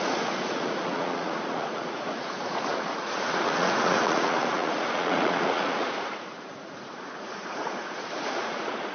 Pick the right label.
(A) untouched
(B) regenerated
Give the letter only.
B